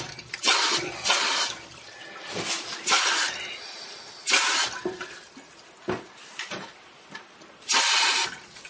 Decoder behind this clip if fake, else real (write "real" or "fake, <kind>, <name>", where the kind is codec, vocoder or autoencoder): real